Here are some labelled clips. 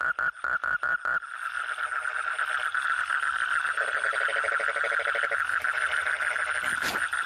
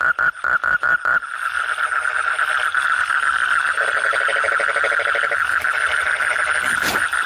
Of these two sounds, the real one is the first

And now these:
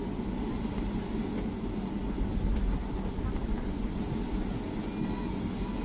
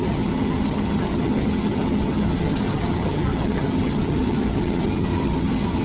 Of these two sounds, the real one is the first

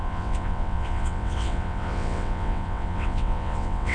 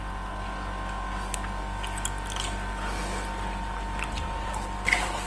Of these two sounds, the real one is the second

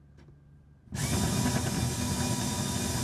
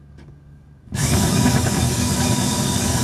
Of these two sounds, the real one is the first